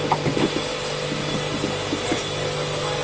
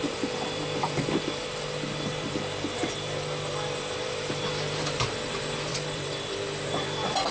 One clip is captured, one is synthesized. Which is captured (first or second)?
first